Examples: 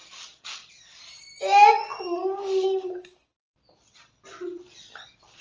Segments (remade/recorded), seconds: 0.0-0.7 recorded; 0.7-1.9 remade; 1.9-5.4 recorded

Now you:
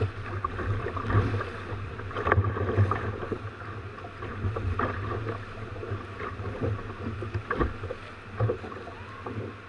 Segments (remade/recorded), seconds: 0.0-9.7 recorded

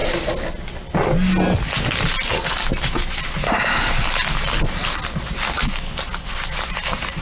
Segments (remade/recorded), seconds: 0.0-7.2 recorded

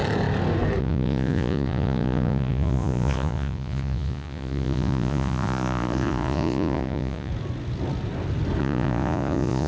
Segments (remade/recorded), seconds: 0.0-0.8 recorded; 0.8-7.3 remade; 7.3-8.6 recorded; 8.6-9.7 remade

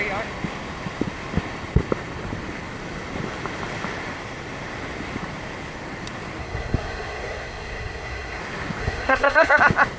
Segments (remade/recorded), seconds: 0.0-6.4 recorded; 6.4-8.4 remade; 8.4-8.8 recorded; 8.8-9.6 remade; 9.6-10.0 recorded

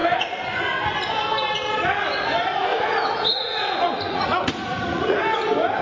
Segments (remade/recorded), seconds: 0.0-0.7 remade; 0.7-2.7 recorded; 2.7-5.2 remade; 5.2-5.8 recorded